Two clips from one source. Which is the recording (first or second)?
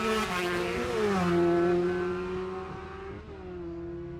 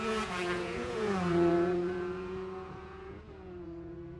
first